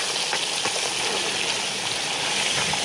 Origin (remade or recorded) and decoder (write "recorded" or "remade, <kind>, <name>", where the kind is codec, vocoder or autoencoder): recorded